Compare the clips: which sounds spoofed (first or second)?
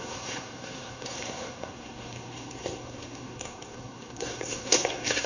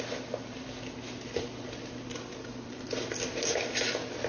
first